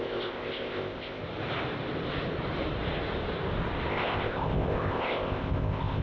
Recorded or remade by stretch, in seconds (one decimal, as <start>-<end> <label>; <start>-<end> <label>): 0.0-1.2 remade; 1.2-3.9 recorded; 3.9-6.0 remade